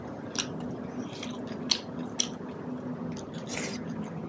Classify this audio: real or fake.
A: real